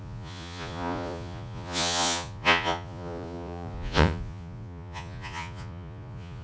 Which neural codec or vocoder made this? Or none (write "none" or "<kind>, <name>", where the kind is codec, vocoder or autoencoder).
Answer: vocoder, Vocos